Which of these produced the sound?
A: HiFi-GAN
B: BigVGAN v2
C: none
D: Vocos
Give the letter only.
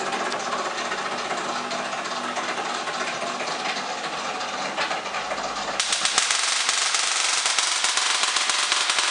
C